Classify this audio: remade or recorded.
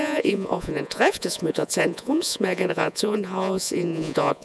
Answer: remade